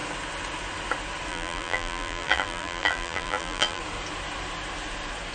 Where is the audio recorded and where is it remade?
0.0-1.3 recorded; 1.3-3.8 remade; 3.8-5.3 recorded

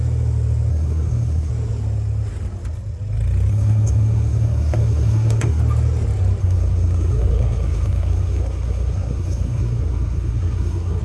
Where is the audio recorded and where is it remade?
0.0-0.7 recorded; 0.7-1.5 remade; 1.5-3.5 recorded; 3.5-5.6 remade; 5.6-6.4 recorded; 6.4-11.0 remade

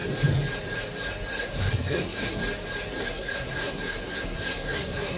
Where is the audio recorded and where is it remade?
0.0-1.3 recorded; 1.3-2.4 remade; 2.4-3.0 recorded; 3.0-5.2 remade

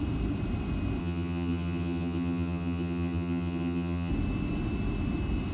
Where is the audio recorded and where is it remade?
0.0-1.0 recorded; 1.0-4.1 remade; 4.1-5.5 recorded

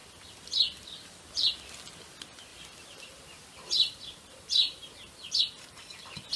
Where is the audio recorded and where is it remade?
0.0-2.5 recorded; 2.5-5.4 remade; 5.4-6.4 recorded